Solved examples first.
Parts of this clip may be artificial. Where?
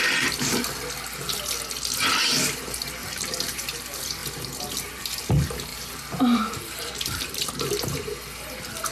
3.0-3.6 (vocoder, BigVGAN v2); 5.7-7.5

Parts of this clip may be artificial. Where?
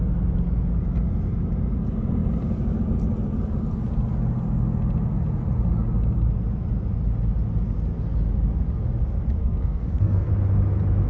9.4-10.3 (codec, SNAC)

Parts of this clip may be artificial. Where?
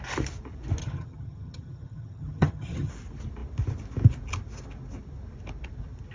0.8-2.9 (vocoder, HiFi-GAN)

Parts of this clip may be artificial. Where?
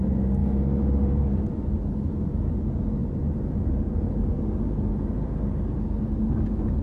3.0-4.4 (vocoder, BigVGAN v2)